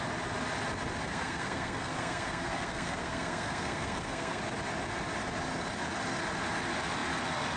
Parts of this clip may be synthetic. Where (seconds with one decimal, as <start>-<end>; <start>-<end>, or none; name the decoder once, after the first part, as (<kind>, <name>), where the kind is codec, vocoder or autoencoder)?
1.1-4.4 (codec, SNAC)